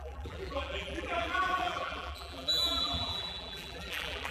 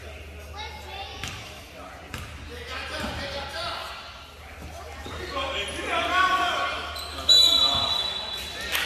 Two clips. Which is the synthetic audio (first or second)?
first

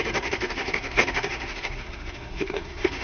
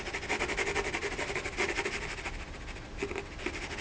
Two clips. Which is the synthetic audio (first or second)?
first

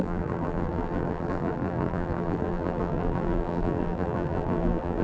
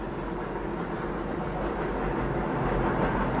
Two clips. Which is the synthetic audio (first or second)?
first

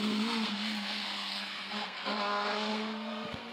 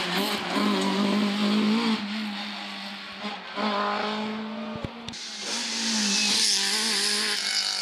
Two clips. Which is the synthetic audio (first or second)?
first